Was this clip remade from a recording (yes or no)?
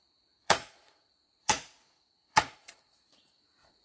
yes